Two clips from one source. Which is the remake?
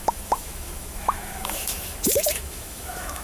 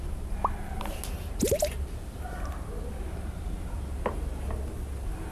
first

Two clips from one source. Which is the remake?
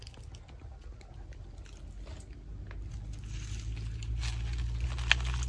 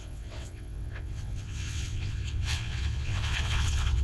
second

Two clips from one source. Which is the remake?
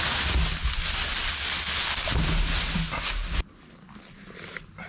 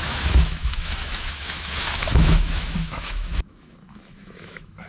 second